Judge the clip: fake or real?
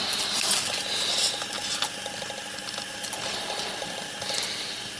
real